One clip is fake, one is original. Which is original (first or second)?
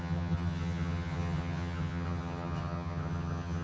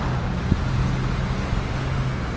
second